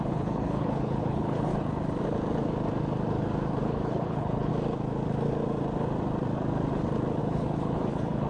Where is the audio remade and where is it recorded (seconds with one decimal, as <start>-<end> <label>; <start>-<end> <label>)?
0.0-1.5 remade; 1.5-3.6 recorded; 3.6-4.5 remade; 4.5-7.2 recorded; 7.2-8.3 remade